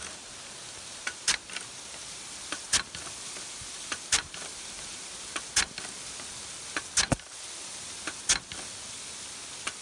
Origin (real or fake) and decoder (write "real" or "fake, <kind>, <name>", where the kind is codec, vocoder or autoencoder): real